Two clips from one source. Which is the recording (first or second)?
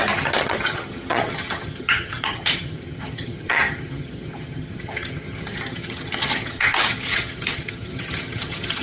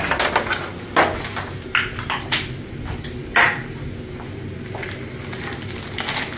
second